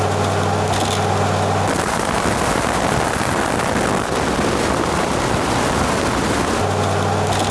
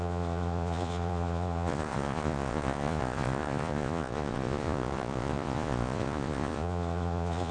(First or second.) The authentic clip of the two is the first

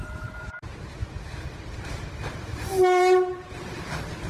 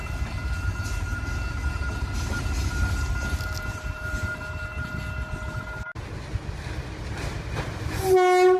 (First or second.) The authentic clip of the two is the second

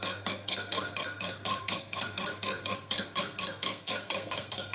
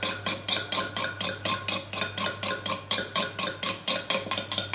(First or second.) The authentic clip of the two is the second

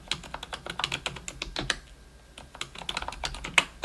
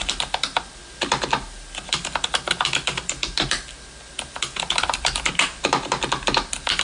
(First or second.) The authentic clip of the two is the first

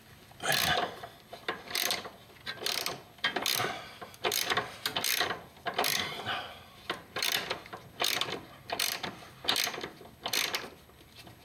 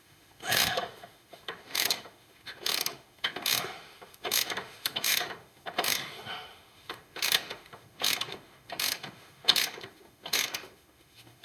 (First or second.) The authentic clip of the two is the first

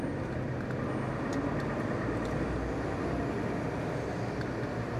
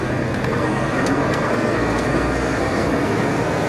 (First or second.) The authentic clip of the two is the first